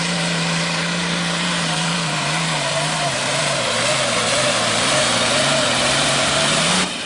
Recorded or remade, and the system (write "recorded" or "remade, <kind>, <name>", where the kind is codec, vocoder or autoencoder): remade, vocoder, BigVGAN v2